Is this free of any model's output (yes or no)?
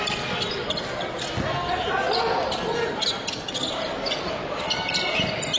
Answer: yes